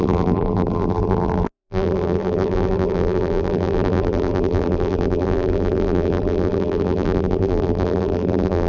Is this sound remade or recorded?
remade